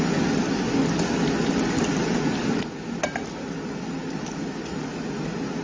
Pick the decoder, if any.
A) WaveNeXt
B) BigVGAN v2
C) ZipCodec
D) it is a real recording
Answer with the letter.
D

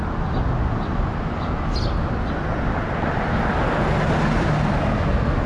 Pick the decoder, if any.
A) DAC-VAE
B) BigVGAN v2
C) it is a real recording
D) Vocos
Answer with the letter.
C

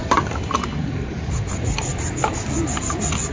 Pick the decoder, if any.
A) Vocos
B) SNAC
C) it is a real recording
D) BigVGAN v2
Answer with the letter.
D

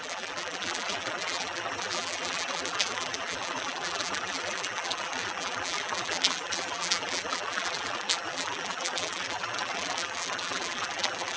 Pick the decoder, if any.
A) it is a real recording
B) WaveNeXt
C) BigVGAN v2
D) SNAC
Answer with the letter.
C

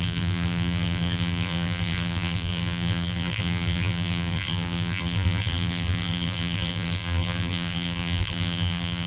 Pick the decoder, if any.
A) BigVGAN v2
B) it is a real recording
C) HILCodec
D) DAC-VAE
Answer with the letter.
A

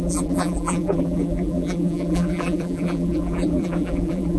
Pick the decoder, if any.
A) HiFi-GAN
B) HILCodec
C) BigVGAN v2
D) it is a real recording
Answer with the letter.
C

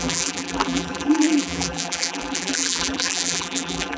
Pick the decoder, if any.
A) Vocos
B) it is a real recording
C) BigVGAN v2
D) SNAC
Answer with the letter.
C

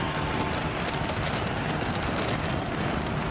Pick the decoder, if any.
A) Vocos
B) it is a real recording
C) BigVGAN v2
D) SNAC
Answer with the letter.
B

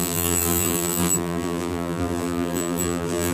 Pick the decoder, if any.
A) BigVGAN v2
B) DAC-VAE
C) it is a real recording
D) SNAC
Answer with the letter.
A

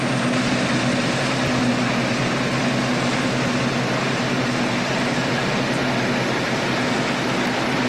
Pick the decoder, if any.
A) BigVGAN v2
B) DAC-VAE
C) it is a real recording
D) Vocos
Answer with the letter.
C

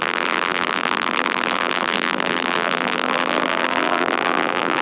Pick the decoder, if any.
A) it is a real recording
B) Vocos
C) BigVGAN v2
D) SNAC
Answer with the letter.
C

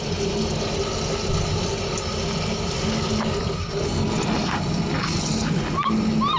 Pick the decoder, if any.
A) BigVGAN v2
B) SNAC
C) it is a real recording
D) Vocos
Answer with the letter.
C